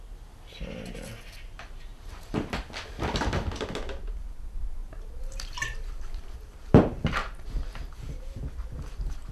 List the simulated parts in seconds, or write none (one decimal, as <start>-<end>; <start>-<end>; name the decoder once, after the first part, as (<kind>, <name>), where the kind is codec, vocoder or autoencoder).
1.9-2.5 (vocoder, BigVGAN v2); 4.8-6.2; 7.2-8.2

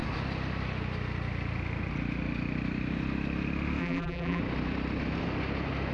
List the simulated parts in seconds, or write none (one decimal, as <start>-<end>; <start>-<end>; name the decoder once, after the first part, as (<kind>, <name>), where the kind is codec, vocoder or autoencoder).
3.8-4.4 (vocoder, BigVGAN v2)

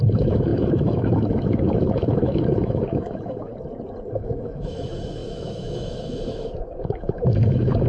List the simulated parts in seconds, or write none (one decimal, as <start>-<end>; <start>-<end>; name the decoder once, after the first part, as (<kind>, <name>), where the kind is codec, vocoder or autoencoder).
0.0-3.5 (autoencoder, DAC-VAE); 4.1-7.9

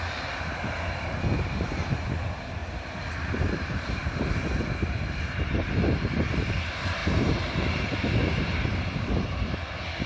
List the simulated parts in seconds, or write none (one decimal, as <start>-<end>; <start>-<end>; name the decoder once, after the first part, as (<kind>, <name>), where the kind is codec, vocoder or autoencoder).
0.0-2.6 (vocoder, BigVGAN v2); 3.3-10.1

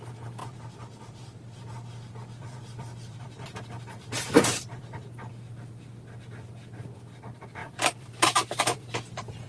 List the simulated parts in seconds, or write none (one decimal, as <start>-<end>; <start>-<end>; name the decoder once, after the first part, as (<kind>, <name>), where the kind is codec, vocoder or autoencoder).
0.4-1.2 (vocoder, BigVGAN v2); 2.4-5.3; 7.6-9.5